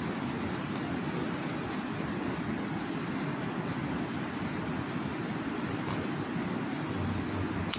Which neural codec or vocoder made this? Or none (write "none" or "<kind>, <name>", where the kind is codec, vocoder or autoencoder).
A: none